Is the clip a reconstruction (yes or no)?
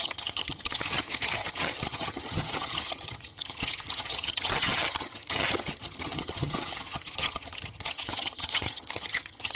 yes